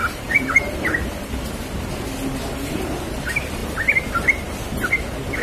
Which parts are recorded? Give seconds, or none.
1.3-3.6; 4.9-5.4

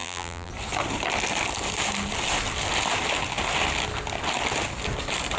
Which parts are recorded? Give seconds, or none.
0.5-5.4

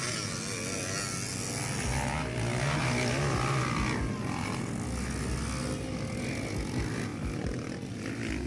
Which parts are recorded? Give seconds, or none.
0.0-8.5

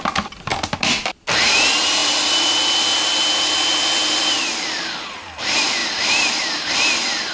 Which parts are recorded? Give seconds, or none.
0.0-7.3

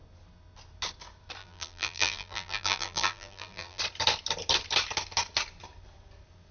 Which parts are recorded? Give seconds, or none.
0.0-1.4; 3.8-6.5

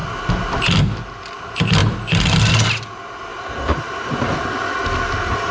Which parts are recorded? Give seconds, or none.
0.6-3.3; 4.1-5.5

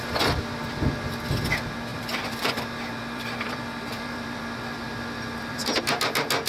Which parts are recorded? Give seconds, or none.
0.0-1.9; 5.8-6.5